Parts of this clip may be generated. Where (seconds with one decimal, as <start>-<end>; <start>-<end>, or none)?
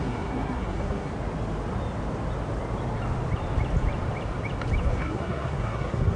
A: 0.0-1.1; 4.8-6.2